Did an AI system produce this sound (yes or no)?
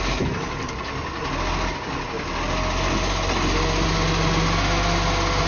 no